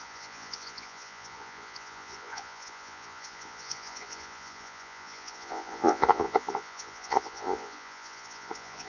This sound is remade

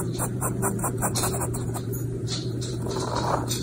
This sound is remade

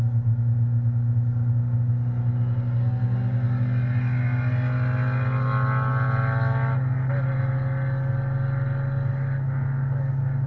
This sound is recorded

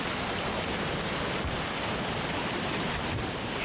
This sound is recorded